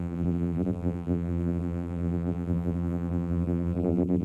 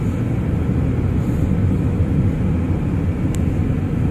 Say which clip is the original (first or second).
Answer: second